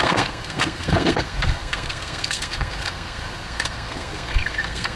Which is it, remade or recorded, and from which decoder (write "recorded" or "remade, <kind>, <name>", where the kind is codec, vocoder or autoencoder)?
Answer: remade, codec, SNAC